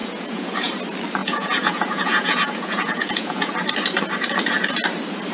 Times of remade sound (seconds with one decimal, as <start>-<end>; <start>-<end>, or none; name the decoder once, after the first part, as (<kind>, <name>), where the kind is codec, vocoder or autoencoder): 0.0-0.7 (vocoder, Vocos); 1.2-3.5